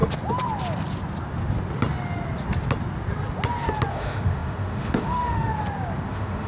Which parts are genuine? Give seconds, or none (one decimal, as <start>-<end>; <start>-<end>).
0.0-3.9; 5.5-6.1